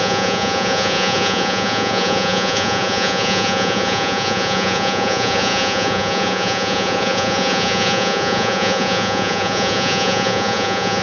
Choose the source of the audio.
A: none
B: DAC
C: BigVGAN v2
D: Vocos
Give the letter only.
D